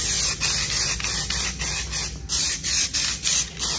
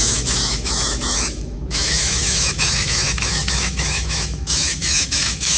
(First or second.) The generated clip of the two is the second